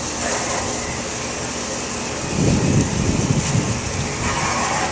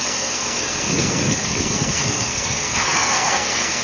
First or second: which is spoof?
second